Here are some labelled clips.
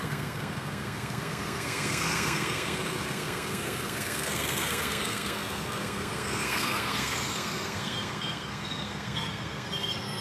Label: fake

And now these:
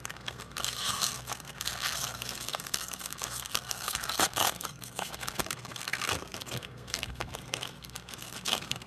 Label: fake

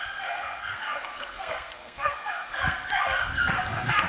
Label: fake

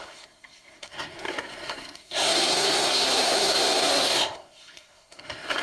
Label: fake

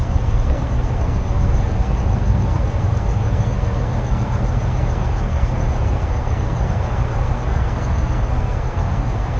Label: fake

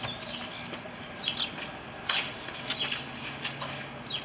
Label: real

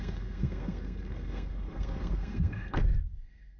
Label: fake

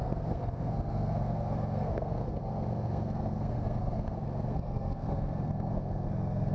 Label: fake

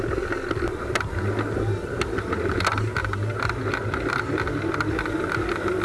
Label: real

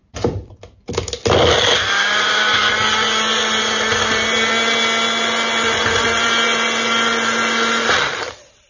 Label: real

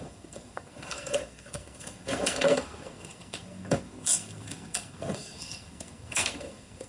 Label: fake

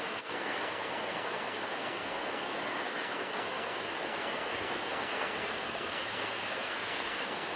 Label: fake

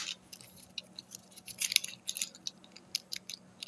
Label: real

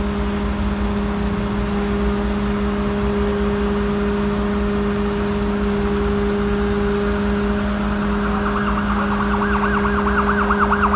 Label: real